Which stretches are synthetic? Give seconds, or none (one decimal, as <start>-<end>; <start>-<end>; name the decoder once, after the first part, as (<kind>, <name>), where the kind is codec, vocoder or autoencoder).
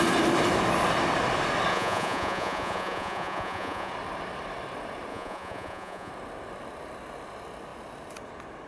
1.7-3.9 (vocoder, Vocos); 5.1-6.1